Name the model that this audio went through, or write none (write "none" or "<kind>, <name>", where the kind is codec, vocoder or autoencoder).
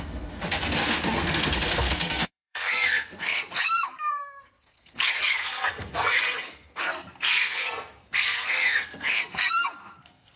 codec, SNAC